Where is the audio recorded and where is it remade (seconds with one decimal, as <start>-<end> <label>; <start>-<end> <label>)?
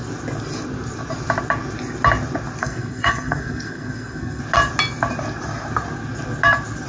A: 0.0-2.6 recorded; 2.6-4.4 remade; 4.4-6.9 recorded